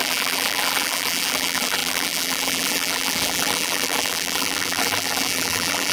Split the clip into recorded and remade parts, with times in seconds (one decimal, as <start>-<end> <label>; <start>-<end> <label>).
0.0-5.9 remade